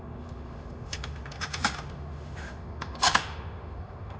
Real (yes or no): no